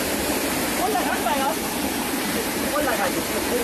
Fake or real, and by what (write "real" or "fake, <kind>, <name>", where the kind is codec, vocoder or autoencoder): fake, vocoder, BigVGAN v2